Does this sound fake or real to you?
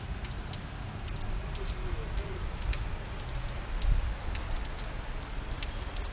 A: real